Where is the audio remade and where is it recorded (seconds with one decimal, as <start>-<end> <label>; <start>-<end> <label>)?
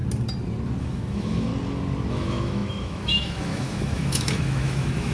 0.0-0.8 recorded; 0.8-1.5 remade; 1.5-2.1 recorded; 2.1-5.1 remade